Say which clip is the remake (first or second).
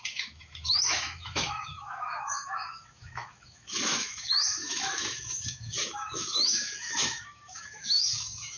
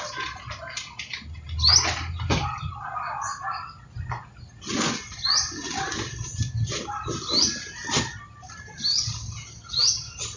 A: first